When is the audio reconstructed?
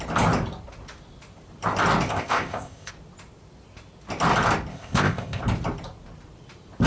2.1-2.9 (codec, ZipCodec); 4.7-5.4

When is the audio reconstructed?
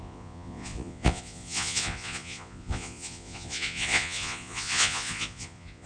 0.0-5.9 (vocoder, Vocos)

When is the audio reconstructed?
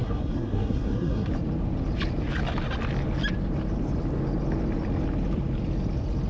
0.0-1.3 (codec, SNAC)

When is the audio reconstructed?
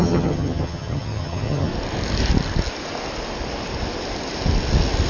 0.0-1.7 (vocoder, HiFi-GAN)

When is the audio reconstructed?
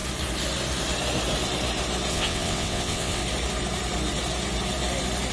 2.1-3.2 (vocoder, WaveNeXt)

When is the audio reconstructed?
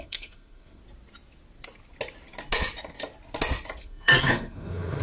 0.0-0.8 (codec, SNAC); 3.8-5.0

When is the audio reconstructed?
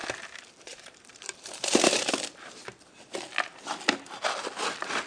0.0-2.1 (vocoder, BigVGAN v2)